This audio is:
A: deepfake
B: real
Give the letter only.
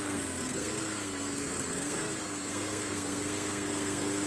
A